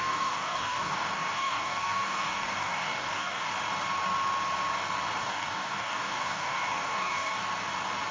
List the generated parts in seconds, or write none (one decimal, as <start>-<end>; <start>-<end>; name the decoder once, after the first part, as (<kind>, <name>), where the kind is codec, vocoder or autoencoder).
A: 0.0-3.5 (codec, DAC); 5.2-7.4